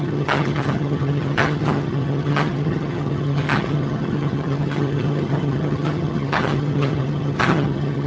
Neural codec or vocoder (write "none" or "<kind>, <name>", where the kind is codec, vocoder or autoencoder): vocoder, HiFi-GAN